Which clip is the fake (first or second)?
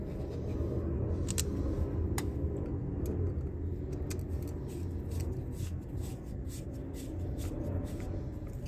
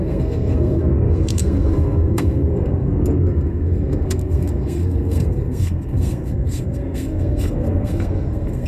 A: second